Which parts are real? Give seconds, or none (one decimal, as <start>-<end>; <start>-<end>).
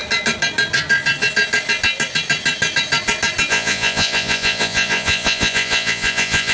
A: 0.0-3.5